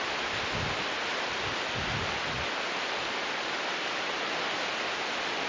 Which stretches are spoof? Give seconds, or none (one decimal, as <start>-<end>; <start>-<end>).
none